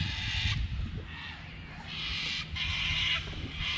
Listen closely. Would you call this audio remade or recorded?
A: recorded